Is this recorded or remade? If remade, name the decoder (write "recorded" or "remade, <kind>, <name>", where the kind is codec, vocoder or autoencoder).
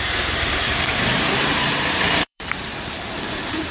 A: remade, vocoder, BigVGAN v2